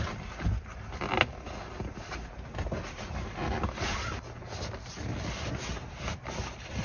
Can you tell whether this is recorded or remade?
recorded